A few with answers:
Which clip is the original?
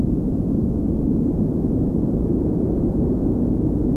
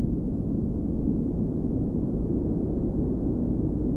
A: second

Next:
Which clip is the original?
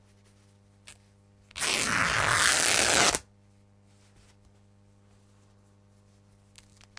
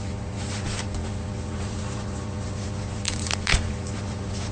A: first